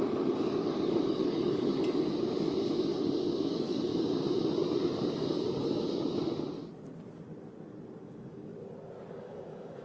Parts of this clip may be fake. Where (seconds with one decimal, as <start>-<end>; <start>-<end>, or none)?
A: 0.0-1.7; 3.5-3.9; 8.0-8.5; 9.1-9.8